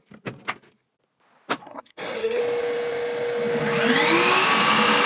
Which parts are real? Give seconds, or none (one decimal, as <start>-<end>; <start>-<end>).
0.0-1.6; 2.4-5.1